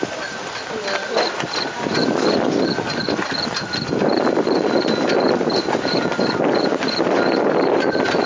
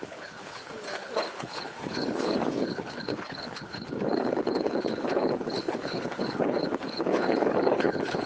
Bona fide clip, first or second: first